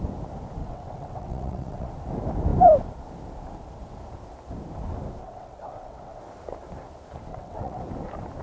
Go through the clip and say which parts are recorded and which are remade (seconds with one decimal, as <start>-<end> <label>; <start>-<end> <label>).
0.0-0.6 recorded; 0.6-1.9 remade; 1.9-5.2 recorded; 5.2-6.2 remade; 6.2-7.3 recorded; 7.3-7.8 remade; 7.8-8.4 recorded